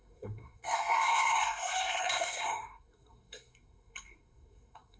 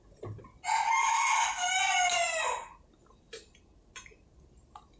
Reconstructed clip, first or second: first